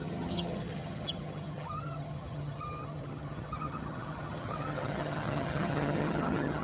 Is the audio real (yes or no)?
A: no